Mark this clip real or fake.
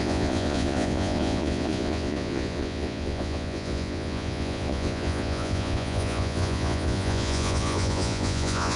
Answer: fake